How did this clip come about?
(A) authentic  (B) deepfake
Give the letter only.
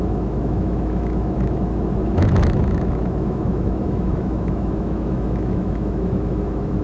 B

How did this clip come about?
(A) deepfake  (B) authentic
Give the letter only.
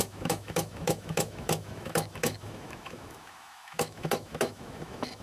A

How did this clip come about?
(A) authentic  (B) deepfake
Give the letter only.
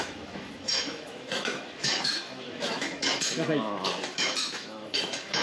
B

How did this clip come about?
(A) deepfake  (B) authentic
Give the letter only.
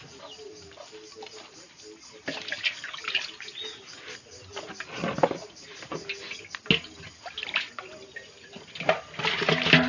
B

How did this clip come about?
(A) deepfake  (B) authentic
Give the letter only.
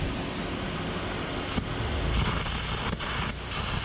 B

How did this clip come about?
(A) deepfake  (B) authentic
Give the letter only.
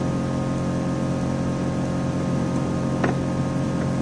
B